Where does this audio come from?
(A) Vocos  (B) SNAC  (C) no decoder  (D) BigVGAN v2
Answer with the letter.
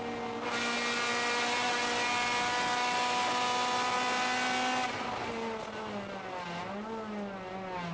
C